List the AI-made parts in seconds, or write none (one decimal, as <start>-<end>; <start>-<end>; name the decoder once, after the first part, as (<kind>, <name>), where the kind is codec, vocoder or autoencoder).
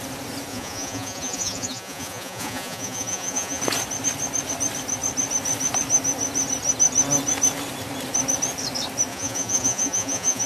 0.5-3.6 (vocoder, Vocos); 9.1-10.5